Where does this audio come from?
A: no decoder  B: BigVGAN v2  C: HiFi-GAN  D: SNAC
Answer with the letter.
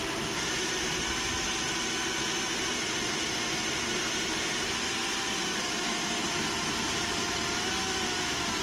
A